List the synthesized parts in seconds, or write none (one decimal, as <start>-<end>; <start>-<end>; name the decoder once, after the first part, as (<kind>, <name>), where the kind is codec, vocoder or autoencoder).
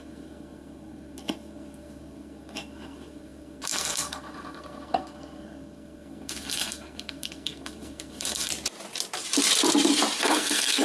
0.0-8.5 (codec, SNAC); 10.2-10.8